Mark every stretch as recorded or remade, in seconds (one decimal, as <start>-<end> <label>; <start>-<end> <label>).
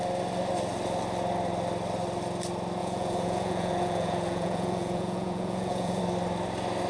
0.0-2.8 recorded; 2.8-6.0 remade; 6.0-6.9 recorded